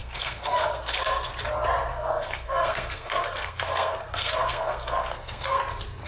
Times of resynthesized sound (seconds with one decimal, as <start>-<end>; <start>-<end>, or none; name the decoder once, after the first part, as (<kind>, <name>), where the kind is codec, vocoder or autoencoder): 0.0-1.3 (codec, SNAC); 1.9-5.6